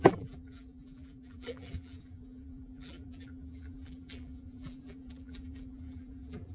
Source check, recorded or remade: remade